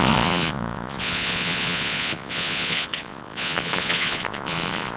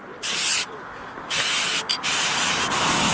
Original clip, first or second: second